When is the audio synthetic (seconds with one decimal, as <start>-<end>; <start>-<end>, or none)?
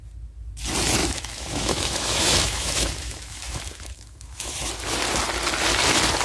1.0-4.7